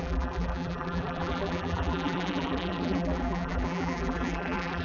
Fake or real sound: fake